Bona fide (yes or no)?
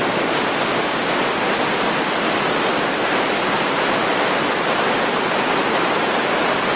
yes